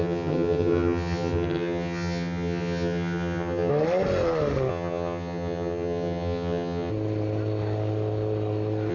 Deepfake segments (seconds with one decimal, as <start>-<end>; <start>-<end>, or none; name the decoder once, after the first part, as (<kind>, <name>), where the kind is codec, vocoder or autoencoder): 0.0-3.7 (vocoder, HiFi-GAN); 4.7-6.9